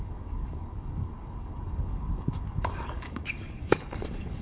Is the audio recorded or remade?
remade